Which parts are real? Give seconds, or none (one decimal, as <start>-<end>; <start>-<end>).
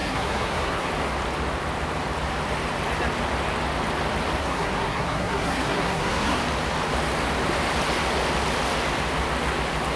0.9-4.4; 6.4-10.0